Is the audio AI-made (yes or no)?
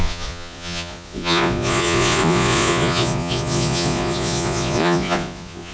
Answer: yes